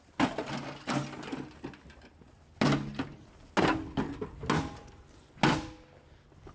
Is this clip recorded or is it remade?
recorded